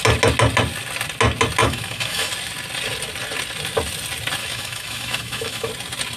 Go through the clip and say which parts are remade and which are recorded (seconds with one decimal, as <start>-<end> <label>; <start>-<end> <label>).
0.0-1.6 recorded; 1.6-2.3 remade; 2.3-4.4 recorded; 4.4-5.7 remade; 5.7-6.2 recorded